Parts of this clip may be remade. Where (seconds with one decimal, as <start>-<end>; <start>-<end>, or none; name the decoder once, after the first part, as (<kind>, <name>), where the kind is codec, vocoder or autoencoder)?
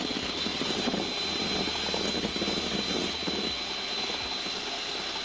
none